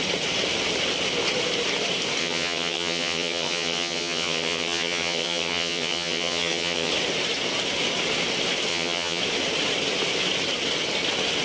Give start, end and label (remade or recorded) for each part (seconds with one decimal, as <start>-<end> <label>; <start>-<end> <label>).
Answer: 0.0-2.2 recorded; 2.2-6.9 remade; 6.9-8.7 recorded; 8.7-9.2 remade; 9.2-11.4 recorded